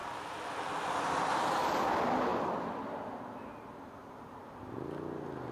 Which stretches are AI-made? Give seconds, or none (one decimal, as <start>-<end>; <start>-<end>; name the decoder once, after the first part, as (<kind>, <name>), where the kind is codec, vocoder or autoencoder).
none